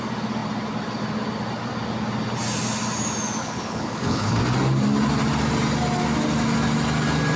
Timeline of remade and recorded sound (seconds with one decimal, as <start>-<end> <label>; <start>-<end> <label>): 0.0-3.4 recorded; 3.4-4.4 remade; 4.4-7.4 recorded